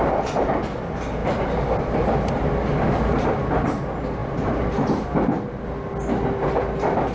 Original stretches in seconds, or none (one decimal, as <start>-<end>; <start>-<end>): 0.0-7.1